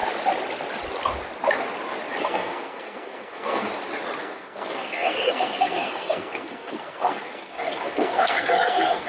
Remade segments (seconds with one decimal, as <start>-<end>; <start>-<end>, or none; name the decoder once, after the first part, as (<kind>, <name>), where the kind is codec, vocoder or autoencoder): 2.2-3.7 (codec, SNAC); 4.2-9.1